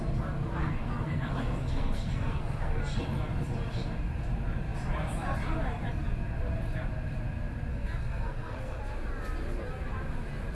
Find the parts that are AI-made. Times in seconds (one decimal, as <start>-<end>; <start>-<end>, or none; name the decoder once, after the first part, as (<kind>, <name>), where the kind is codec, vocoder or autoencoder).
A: 0.6-2.8 (codec, SNAC); 7.7-8.8